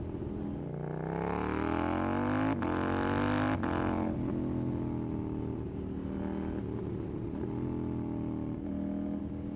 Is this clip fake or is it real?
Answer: real